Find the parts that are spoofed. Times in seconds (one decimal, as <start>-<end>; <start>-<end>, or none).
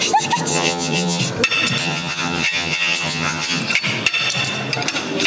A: 0.5-1.2; 1.8-3.6